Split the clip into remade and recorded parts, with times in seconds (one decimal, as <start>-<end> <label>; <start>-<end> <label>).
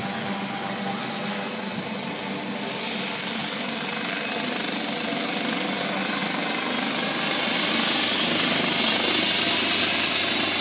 0.0-10.6 recorded